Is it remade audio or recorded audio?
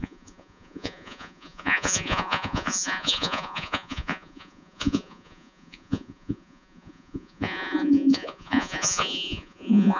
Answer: remade